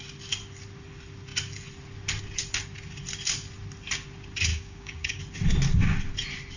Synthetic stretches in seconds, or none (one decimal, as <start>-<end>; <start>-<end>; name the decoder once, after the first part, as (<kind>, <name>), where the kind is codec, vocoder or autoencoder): 4.5-5.2 (codec, DAC)